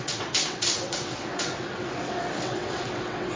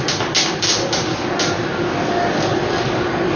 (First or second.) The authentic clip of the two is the second